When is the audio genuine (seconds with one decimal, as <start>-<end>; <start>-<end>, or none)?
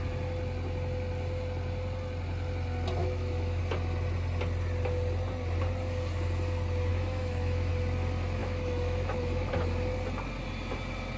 0.0-3.0; 3.6-6.9; 7.7-8.4; 9.5-11.2